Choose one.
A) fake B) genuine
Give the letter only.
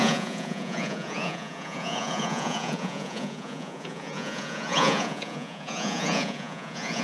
A